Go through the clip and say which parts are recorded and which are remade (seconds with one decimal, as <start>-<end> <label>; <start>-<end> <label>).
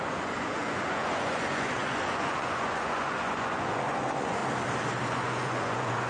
0.0-4.4 remade; 4.4-5.1 recorded; 5.1-6.1 remade